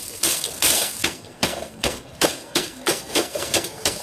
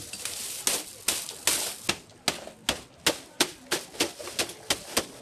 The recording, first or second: second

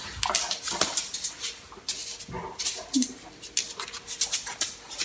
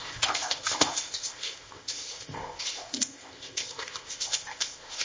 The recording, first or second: first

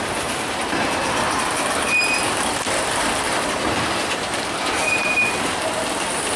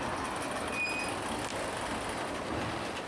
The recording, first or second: second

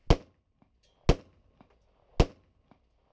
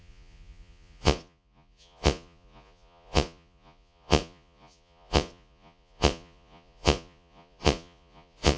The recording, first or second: first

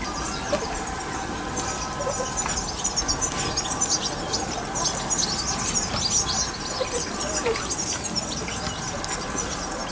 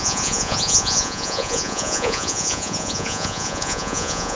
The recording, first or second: first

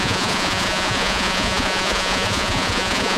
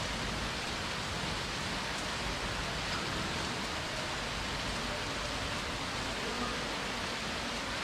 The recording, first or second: second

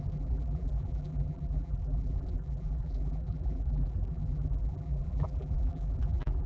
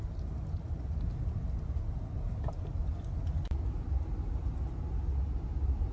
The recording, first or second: second